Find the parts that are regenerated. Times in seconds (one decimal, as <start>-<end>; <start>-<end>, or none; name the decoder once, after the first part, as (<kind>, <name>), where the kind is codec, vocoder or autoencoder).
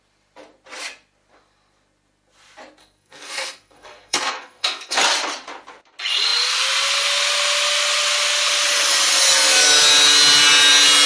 2.8-5.0 (codec, SNAC)